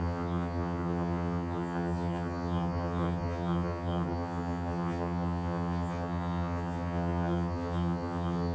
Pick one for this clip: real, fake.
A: fake